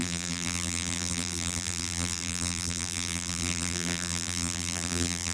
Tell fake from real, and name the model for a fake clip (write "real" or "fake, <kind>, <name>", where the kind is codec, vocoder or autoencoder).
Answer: fake, vocoder, BigVGAN v2